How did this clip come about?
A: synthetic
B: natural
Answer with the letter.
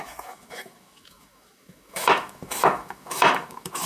A